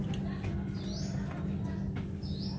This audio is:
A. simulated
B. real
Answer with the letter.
B